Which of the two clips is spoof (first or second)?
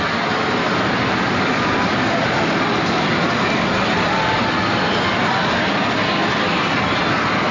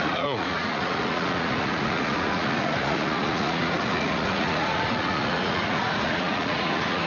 second